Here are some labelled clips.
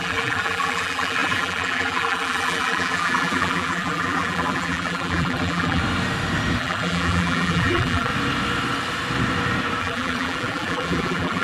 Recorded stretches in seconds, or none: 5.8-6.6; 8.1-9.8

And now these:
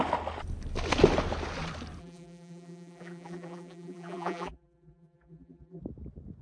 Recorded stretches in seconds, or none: 0.0-2.0; 5.8-6.4